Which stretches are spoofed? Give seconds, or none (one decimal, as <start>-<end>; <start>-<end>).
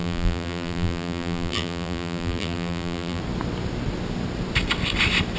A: 0.0-3.2